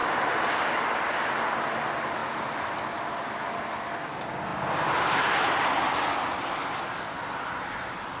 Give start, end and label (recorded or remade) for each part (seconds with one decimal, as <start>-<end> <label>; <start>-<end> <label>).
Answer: 0.0-8.2 recorded